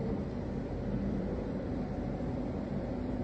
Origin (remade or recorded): remade